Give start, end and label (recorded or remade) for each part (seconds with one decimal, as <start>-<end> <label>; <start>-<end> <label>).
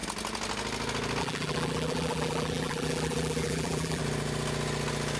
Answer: 0.0-1.2 recorded; 1.2-4.0 remade; 4.0-5.2 recorded